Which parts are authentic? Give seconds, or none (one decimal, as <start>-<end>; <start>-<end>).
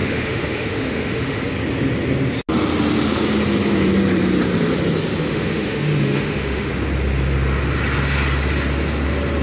1.4-5.2; 6.7-9.4